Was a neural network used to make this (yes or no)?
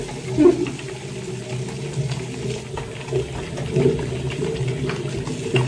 no